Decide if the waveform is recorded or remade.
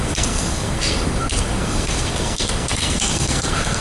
remade